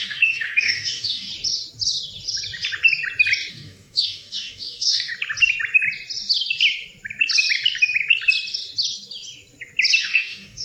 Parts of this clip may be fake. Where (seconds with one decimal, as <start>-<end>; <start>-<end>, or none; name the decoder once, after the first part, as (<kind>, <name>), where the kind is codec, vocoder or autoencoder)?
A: 0.0-1.3 (codec, DAC); 3.5-5.1; 10.0-10.6